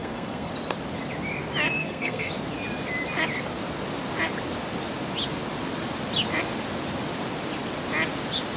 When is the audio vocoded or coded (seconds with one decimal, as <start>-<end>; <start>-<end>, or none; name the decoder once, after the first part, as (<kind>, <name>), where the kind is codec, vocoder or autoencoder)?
0.0-0.5 (codec, SNAC); 1.8-2.3